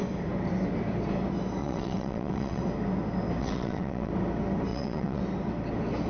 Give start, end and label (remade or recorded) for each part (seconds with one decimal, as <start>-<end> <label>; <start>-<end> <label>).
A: 0.0-1.6 recorded; 1.6-2.6 remade; 2.6-3.4 recorded; 3.4-4.1 remade; 4.1-4.7 recorded; 4.7-5.2 remade; 5.2-6.1 recorded